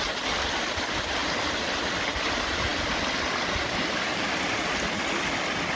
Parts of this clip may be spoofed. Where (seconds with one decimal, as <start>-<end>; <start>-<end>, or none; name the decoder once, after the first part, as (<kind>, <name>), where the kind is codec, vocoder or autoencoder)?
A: none